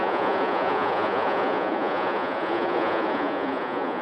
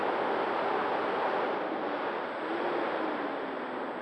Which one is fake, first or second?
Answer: first